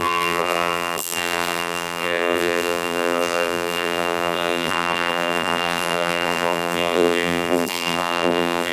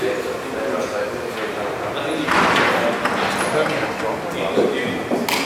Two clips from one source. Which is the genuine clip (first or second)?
second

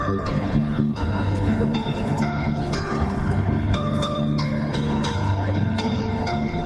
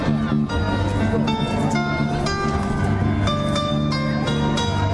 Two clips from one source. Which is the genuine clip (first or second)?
second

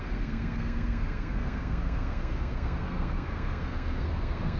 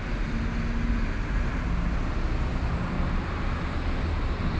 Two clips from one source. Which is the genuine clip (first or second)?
second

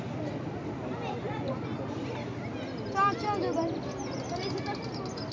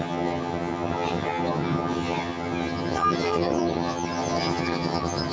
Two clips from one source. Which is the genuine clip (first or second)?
first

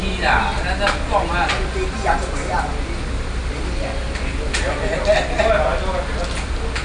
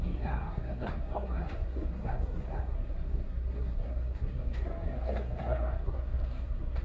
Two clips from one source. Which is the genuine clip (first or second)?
first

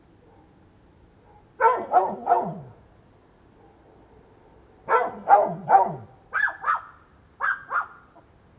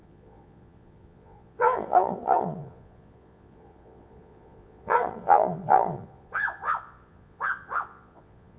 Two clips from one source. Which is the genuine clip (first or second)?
first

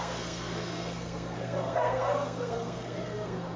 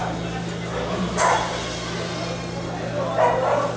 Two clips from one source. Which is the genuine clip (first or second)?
second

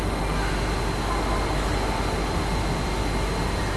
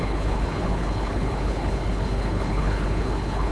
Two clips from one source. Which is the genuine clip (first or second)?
first